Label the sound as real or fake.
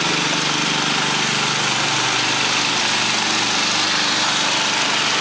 real